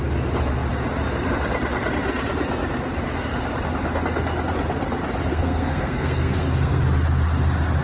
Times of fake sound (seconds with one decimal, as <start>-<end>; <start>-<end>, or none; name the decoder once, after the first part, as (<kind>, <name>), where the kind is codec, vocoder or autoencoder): 5.3-6.8 (codec, SNAC)